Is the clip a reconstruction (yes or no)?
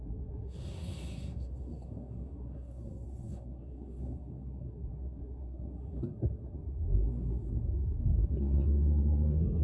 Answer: yes